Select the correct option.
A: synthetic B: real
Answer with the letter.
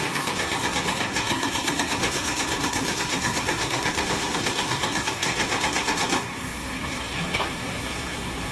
A